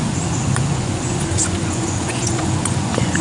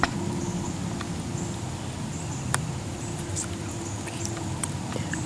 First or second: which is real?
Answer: second